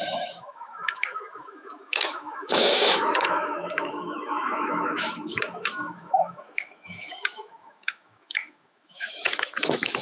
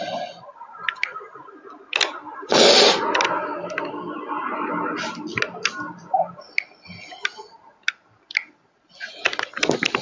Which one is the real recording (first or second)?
second